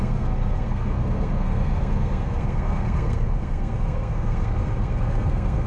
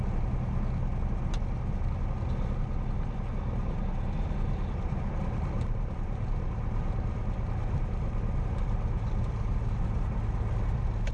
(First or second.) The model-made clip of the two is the first